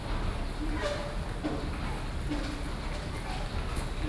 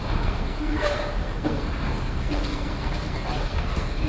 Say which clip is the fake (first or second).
second